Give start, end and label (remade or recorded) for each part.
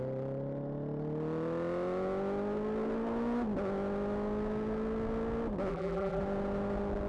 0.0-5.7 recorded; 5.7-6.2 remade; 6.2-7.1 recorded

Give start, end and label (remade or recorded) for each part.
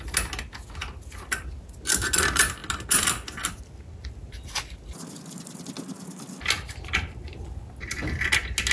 0.0-8.7 recorded